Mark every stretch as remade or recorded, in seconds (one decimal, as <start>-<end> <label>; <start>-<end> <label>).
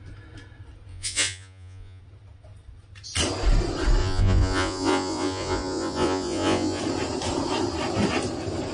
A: 0.0-0.9 recorded; 0.9-2.0 remade; 2.0-4.0 recorded; 4.0-6.8 remade; 6.8-8.7 recorded